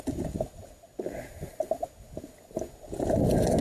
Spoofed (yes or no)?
no